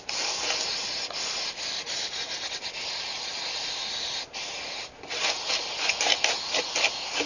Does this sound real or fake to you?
real